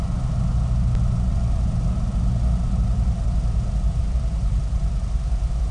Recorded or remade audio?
recorded